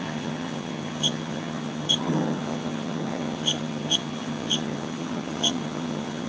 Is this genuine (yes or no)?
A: no